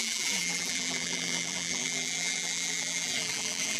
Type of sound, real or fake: fake